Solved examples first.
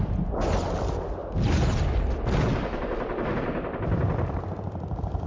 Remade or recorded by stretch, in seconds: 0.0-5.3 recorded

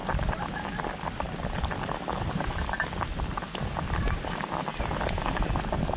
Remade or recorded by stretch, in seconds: 0.0-6.0 recorded

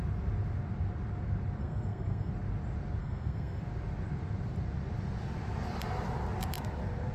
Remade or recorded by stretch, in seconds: 0.0-1.6 recorded; 1.6-2.3 remade; 2.3-3.0 recorded; 3.0-3.6 remade; 3.6-7.1 recorded

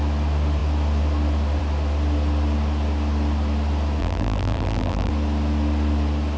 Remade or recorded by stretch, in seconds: 0.0-4.0 recorded; 4.0-5.1 remade; 5.1-6.4 recorded